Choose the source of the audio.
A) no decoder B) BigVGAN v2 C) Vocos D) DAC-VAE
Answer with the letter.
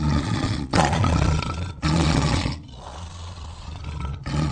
C